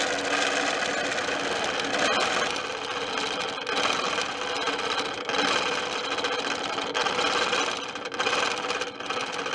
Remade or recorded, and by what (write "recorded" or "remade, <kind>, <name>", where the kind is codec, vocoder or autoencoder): recorded